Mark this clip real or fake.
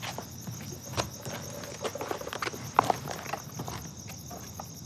real